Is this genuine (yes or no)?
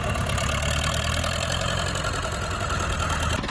yes